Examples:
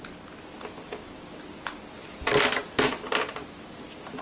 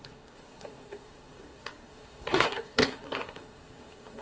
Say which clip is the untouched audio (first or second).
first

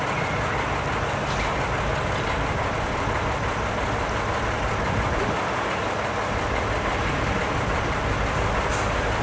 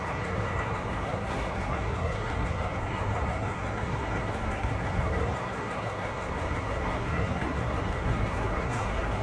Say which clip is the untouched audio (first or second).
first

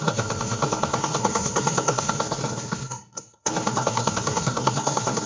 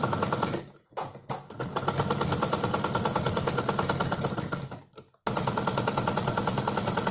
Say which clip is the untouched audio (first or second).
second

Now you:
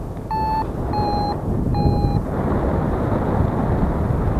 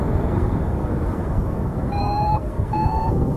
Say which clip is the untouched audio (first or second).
first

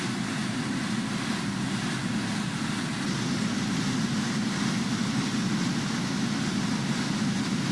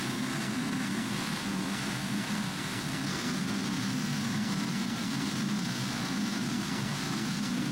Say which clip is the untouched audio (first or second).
first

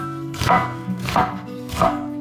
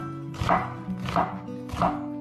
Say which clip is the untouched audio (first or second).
second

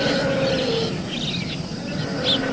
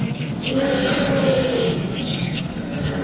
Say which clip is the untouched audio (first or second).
first